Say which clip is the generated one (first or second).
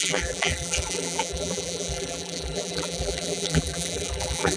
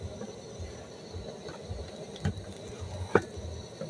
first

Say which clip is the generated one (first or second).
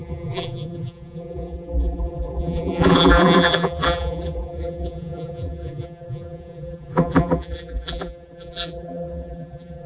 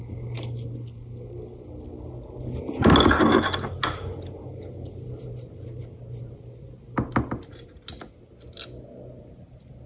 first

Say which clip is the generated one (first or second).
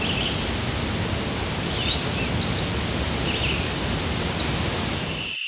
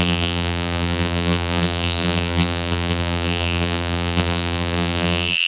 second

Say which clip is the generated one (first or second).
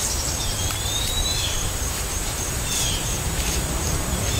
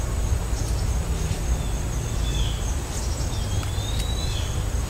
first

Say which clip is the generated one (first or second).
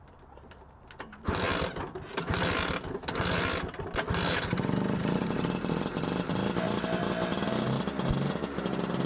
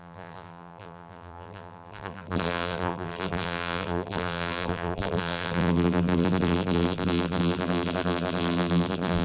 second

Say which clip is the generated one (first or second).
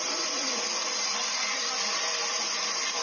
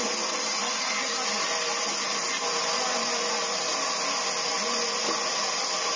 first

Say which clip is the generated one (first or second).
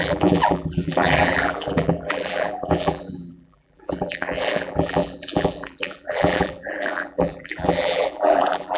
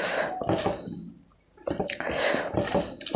first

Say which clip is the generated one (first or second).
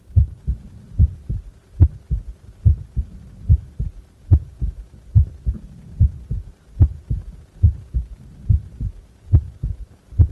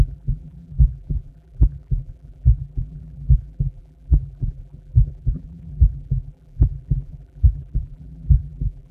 second